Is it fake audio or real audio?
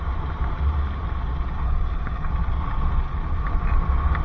real